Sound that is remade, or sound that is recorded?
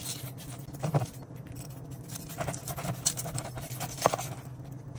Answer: recorded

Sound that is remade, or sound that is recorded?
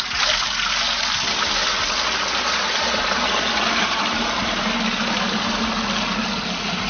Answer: recorded